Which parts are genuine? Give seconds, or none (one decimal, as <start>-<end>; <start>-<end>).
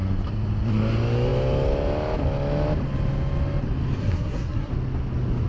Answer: 0.0-4.0; 4.7-5.5